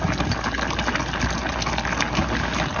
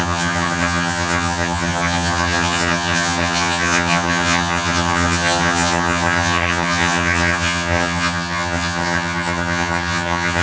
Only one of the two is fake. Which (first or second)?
second